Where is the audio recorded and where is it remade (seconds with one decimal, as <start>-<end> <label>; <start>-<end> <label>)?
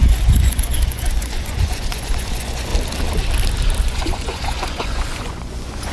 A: 0.0-2.7 remade; 2.7-3.8 recorded; 3.8-5.9 remade